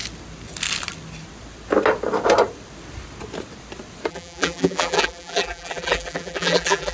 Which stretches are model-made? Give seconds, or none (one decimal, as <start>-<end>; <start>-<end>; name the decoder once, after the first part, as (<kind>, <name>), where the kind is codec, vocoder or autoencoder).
4.1-6.9 (vocoder, BigVGAN v2)